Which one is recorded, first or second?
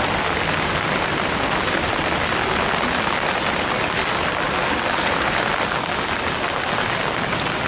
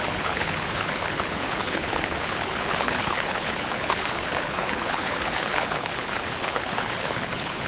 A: first